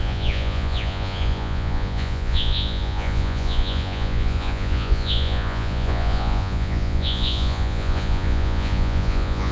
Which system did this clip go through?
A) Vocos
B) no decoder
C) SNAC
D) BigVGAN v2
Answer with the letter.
A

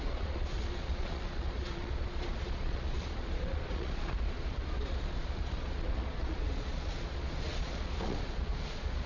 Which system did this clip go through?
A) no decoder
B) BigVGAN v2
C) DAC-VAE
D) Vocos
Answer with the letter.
D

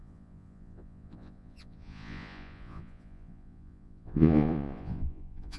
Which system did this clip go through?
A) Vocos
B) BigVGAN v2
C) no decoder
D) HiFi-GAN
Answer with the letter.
A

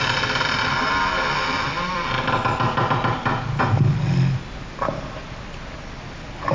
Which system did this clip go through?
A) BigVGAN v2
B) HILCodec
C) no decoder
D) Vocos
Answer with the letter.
C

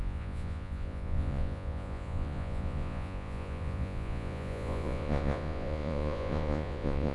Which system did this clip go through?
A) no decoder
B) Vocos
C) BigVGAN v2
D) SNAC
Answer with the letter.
B